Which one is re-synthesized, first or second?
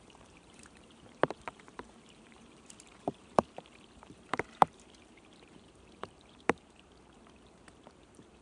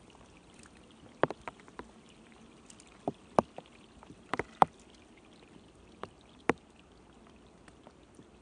first